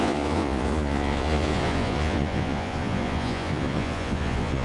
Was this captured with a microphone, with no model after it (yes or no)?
no